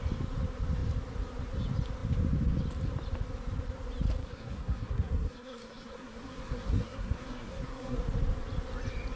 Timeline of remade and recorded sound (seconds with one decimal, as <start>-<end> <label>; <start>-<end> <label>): 0.0-4.2 recorded; 4.2-8.0 remade; 8.0-9.2 recorded